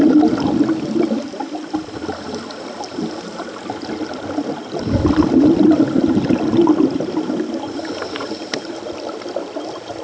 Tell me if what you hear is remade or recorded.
recorded